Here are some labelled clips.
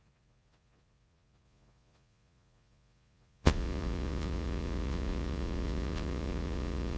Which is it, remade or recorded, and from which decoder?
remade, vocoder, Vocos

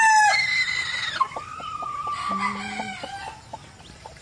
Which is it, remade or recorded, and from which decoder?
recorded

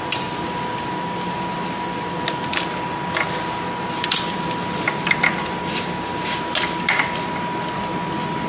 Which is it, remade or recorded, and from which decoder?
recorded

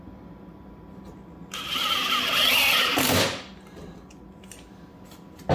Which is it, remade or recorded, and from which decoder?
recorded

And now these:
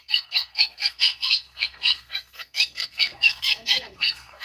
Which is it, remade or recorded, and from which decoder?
remade, codec, SNAC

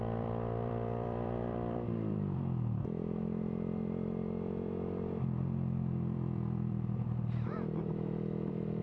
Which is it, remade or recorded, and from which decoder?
remade, vocoder, BigVGAN v2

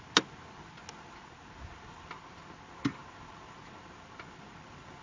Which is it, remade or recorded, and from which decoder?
recorded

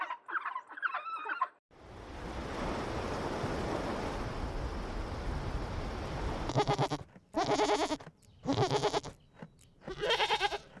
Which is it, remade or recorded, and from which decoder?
recorded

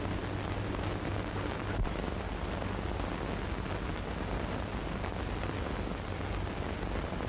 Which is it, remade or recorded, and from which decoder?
recorded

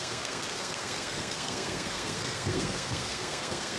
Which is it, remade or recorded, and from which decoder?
remade, codec, SNAC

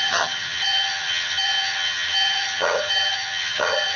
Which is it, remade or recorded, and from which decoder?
remade, vocoder, HiFi-GAN